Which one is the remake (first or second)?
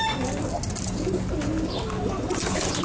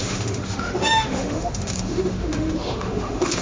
second